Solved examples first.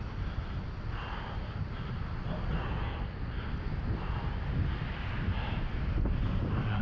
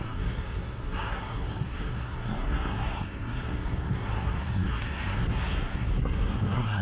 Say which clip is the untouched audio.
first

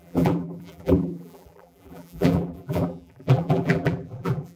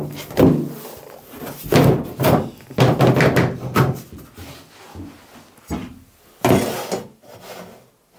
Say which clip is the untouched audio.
second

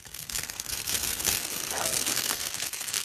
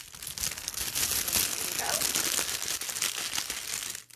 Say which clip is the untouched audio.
second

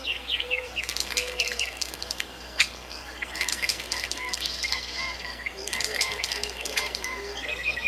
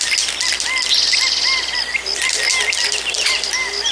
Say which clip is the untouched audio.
second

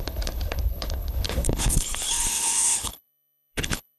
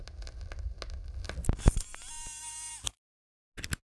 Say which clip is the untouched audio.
second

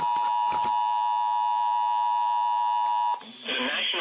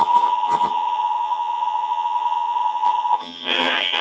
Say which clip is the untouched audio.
first